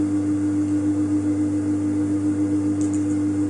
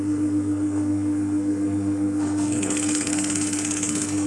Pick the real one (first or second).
first